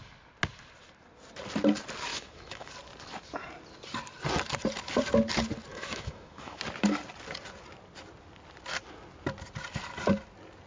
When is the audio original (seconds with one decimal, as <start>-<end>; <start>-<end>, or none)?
0.0-2.1; 2.7-5.7; 6.6-10.7